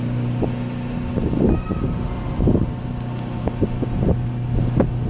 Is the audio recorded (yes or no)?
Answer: yes